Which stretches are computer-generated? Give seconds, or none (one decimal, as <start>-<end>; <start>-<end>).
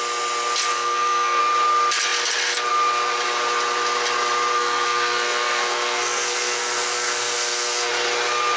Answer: 0.7-1.4; 4.5-7.9